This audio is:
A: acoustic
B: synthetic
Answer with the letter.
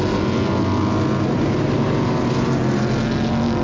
A